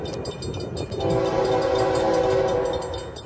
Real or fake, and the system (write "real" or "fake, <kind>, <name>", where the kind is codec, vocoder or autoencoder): real